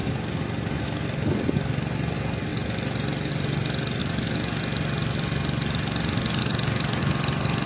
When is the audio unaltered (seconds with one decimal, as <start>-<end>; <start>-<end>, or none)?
1.4-4.0; 4.6-6.4; 7.0-7.7